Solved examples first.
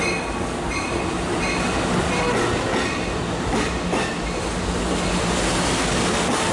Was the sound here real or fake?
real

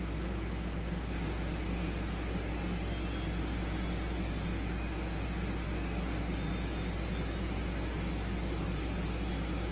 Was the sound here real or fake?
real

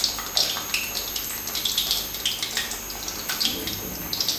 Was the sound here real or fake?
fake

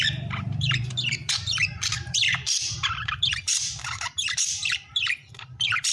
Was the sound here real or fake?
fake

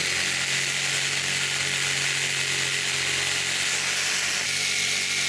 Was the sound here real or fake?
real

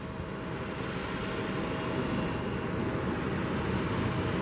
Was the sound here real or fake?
real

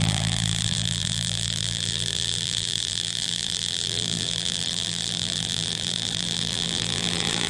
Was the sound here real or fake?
fake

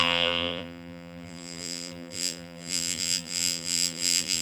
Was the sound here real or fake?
fake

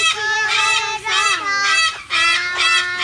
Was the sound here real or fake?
real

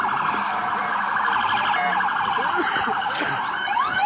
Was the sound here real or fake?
real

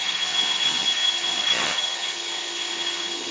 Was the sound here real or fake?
fake